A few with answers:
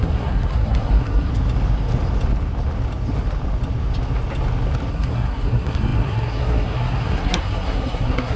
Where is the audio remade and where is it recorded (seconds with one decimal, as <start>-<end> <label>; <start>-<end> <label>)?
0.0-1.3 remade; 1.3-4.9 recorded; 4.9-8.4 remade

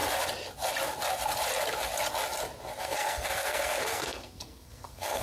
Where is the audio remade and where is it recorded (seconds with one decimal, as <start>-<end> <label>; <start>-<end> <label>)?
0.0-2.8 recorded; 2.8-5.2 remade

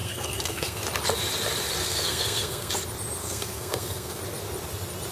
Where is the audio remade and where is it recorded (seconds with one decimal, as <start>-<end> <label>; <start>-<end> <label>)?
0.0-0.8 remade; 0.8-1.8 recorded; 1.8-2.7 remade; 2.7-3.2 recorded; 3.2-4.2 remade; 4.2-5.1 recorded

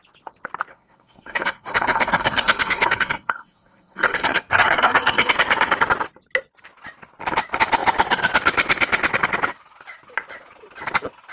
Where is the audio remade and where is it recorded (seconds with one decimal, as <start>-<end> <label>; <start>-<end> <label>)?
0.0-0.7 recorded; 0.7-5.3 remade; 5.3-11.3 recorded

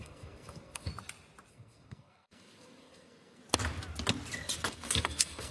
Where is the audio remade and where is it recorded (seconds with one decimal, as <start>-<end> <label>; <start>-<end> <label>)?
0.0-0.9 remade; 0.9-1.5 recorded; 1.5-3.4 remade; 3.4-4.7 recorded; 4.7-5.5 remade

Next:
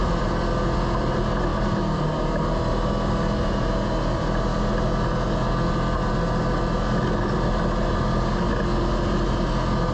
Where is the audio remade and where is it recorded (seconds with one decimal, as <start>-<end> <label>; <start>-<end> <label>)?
0.0-9.9 recorded